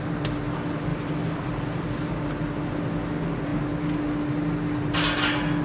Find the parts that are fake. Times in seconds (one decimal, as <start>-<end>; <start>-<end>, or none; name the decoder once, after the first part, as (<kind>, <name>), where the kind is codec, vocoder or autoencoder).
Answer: 0.9-2.1 (vocoder, BigVGAN v2)